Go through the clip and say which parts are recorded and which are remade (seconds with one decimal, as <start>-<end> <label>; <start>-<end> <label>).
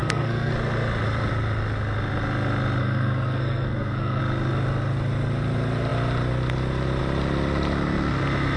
0.0-0.5 remade; 0.5-2.8 recorded; 2.8-4.2 remade; 4.2-8.6 recorded